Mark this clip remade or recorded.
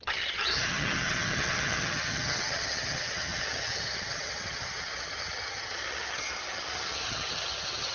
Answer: remade